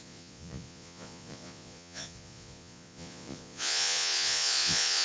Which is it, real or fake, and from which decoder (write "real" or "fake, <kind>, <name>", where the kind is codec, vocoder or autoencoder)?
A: fake, vocoder, Vocos